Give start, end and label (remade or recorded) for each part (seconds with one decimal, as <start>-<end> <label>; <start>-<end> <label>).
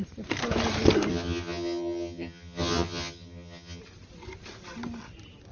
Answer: 0.0-1.1 recorded; 1.1-3.8 remade; 3.8-5.5 recorded